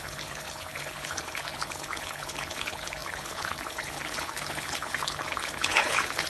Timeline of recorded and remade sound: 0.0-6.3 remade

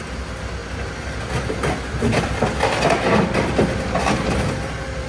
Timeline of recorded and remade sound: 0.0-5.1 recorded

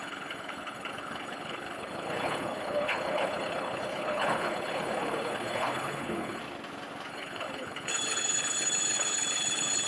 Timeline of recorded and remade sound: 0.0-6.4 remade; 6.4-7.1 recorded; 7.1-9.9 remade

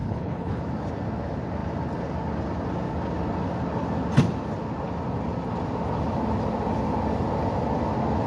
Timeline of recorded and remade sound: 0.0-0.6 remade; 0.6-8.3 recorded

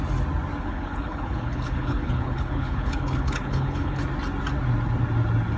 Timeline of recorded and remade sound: 0.0-0.6 recorded; 0.6-4.0 remade; 4.0-5.6 recorded

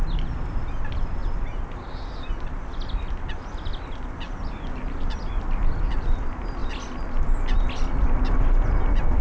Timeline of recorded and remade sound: 0.0-9.2 recorded